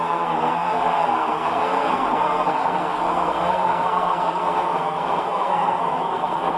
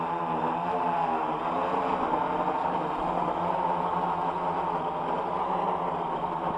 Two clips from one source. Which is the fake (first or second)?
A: first